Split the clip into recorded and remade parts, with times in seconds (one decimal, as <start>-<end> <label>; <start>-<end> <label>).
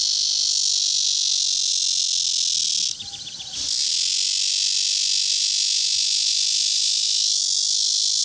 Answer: 0.0-8.2 recorded